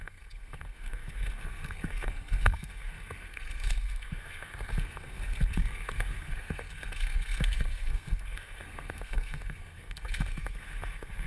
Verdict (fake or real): fake